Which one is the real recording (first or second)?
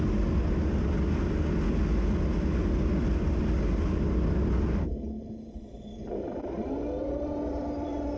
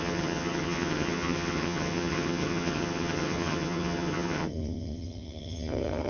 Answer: first